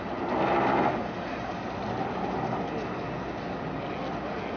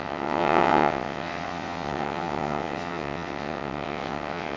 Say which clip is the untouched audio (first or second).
first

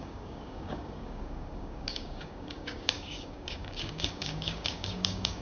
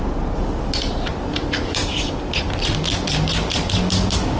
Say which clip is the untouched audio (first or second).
second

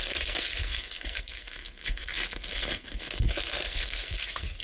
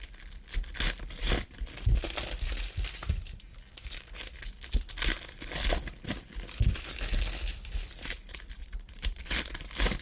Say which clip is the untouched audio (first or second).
second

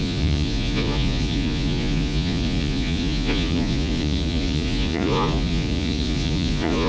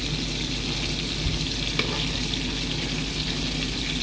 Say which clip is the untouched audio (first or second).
second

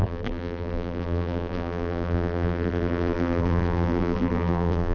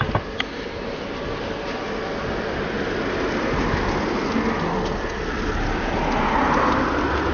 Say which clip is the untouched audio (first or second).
second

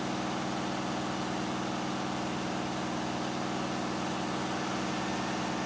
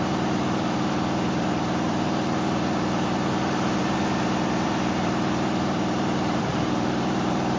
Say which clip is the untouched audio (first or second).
first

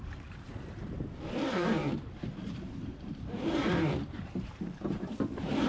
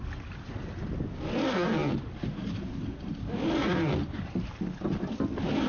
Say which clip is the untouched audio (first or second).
second